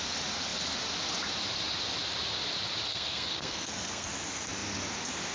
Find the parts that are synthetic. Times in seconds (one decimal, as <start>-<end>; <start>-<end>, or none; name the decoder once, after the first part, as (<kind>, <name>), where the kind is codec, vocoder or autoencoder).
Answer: 2.9-4.1 (codec, SNAC)